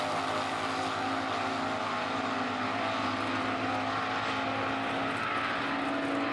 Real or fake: real